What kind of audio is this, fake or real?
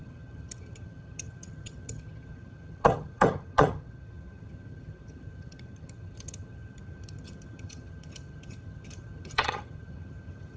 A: fake